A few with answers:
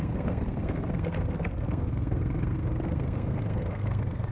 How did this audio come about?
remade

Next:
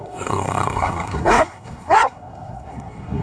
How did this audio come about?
remade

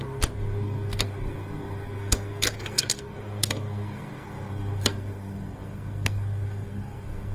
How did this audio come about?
remade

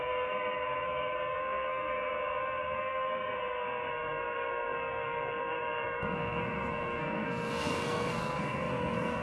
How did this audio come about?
remade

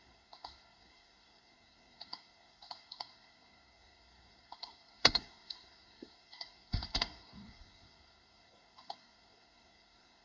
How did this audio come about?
remade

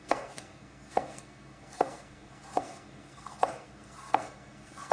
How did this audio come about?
remade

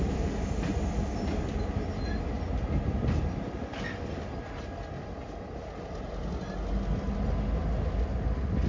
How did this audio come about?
recorded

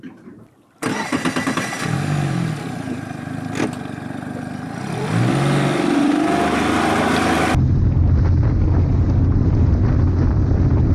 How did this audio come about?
recorded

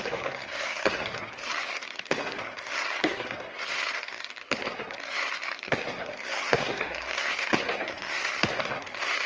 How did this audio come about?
remade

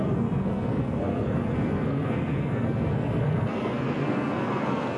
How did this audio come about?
remade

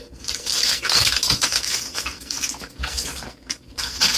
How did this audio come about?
remade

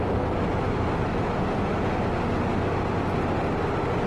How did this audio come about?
recorded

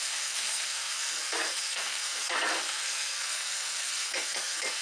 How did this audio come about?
remade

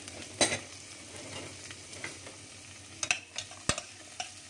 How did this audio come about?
recorded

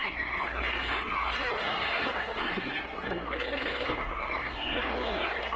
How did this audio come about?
remade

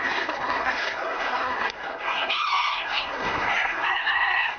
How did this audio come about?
remade